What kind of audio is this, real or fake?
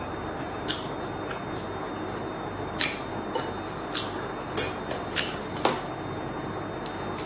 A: real